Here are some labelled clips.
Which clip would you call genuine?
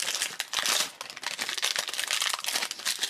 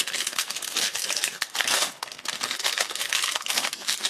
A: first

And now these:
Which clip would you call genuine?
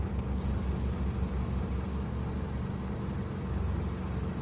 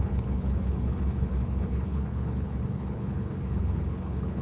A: first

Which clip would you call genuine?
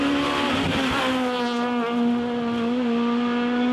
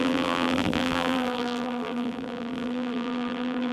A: first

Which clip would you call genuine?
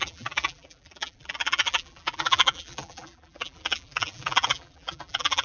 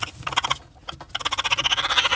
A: second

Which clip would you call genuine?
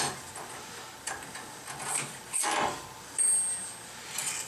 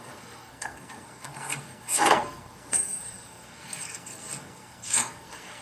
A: first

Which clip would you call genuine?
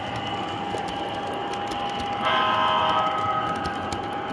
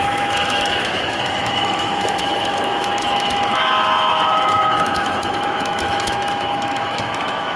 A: first